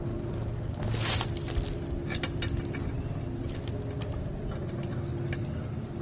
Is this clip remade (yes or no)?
no